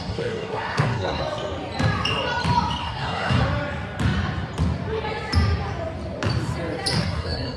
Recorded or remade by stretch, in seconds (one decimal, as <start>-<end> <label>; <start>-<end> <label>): 0.0-1.2 remade; 1.2-2.8 recorded; 2.8-3.4 remade; 3.4-7.0 recorded; 7.0-7.6 remade